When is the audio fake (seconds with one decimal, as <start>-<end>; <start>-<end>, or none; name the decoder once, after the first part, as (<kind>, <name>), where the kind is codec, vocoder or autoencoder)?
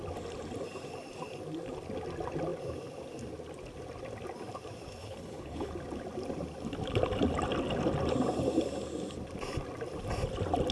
5.0-5.7 (codec, HILCodec)